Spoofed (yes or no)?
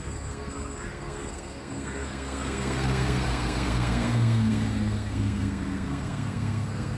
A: yes